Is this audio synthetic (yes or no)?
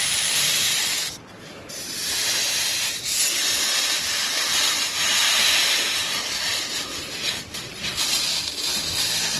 yes